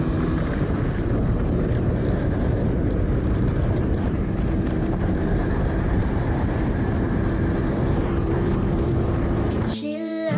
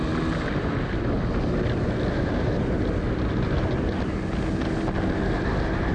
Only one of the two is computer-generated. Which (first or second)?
first